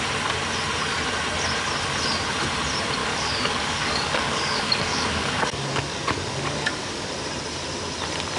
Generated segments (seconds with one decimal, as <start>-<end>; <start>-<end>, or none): 3.0-7.1